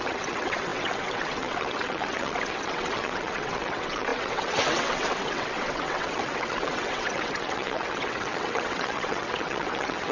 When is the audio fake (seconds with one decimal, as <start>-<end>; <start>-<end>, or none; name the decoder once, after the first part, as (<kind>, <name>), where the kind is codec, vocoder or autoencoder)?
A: 0.0-10.1 (vocoder, WaveNeXt)